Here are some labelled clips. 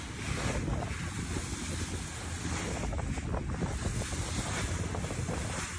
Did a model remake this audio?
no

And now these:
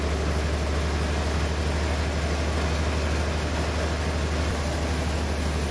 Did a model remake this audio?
no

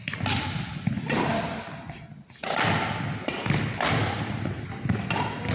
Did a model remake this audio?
no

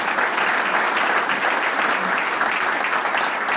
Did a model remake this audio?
no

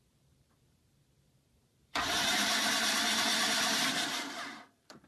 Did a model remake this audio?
yes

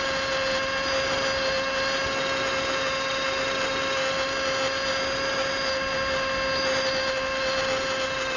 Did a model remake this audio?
no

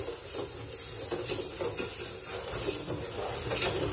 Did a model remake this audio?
no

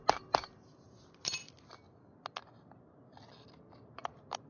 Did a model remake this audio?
no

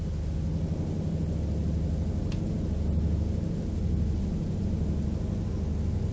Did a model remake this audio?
no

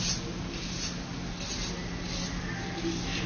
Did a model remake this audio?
no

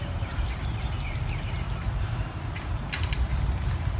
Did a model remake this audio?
yes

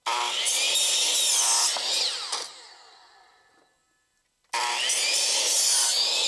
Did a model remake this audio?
no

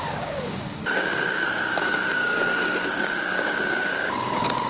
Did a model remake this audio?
yes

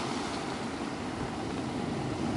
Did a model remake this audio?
no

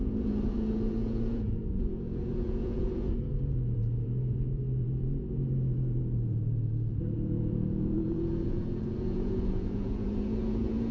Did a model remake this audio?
yes